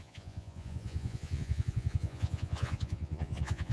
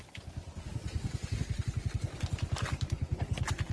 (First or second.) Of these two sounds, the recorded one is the second